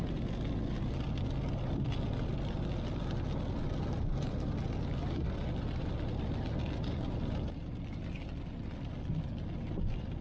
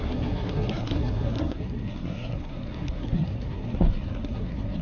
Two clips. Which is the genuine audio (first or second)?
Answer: first